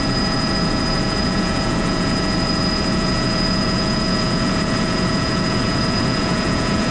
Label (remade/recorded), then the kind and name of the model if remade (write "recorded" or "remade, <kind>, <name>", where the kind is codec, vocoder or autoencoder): remade, vocoder, Vocos